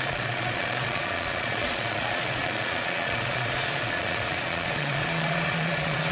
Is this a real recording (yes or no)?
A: no